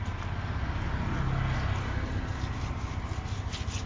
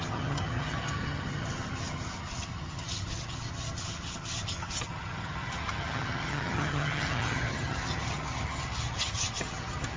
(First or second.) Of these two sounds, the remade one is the second